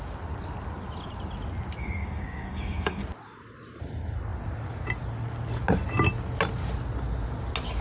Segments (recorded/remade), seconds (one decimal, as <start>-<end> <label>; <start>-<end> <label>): 0.0-1.8 recorded; 1.8-3.0 remade; 3.0-7.8 recorded